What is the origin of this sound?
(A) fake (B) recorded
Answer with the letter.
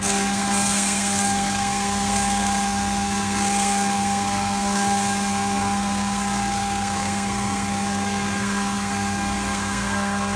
A